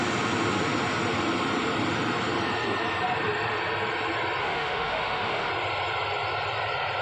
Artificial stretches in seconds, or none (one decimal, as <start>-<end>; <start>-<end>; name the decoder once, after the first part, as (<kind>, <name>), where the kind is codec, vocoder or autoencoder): 4.4-5.5 (autoencoder, DAC-VAE)